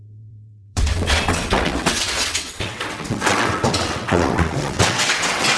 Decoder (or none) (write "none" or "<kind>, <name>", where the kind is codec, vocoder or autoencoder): vocoder, WaveNeXt